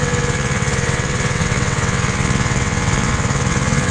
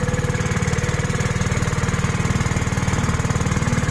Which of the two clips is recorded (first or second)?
second